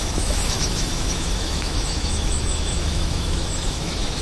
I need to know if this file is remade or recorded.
remade